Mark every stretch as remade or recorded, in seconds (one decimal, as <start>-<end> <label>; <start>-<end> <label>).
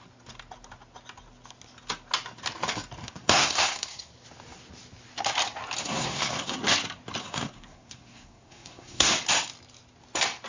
0.0-3.0 recorded; 3.0-4.1 remade; 4.1-5.8 recorded; 5.8-6.6 remade; 6.6-7.2 recorded; 7.2-9.1 remade; 9.1-10.5 recorded